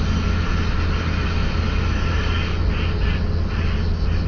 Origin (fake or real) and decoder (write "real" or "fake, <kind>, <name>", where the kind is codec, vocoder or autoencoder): real